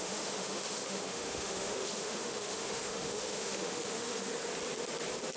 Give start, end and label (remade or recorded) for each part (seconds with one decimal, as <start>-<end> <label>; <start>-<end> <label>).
0.0-4.3 remade; 4.3-5.4 recorded